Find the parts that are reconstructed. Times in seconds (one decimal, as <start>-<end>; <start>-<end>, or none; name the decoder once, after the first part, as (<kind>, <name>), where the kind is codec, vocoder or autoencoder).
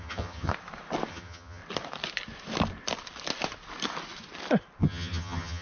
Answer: 0.0-0.5 (vocoder, HiFi-GAN); 1.1-1.6; 4.8-5.6